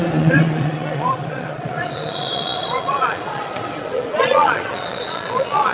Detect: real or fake fake